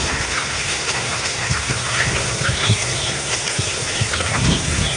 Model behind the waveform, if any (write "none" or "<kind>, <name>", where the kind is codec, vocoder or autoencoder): codec, SNAC